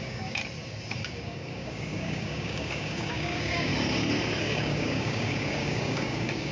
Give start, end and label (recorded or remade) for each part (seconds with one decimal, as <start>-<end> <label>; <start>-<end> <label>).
0.0-0.4 remade; 0.4-0.9 recorded; 0.9-3.7 remade; 3.7-4.4 recorded; 4.4-6.5 remade